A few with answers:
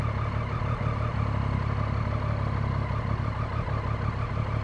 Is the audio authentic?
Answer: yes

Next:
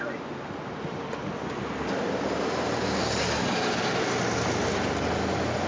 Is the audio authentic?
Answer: yes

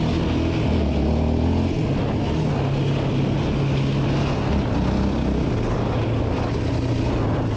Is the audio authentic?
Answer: yes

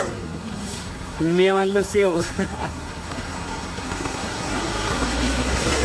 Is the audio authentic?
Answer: no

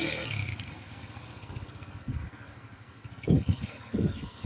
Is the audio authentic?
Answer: no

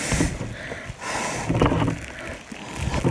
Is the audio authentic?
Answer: yes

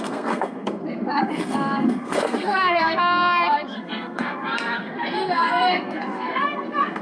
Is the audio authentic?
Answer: no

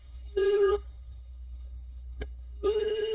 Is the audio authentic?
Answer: no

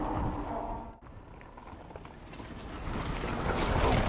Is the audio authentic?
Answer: yes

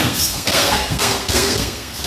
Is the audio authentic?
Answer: no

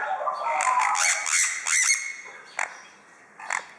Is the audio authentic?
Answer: yes